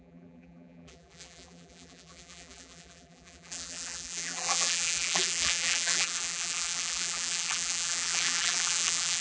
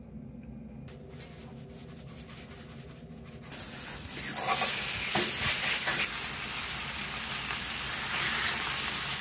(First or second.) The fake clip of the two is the first